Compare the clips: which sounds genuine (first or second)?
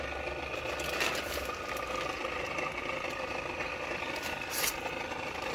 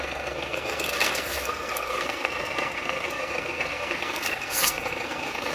first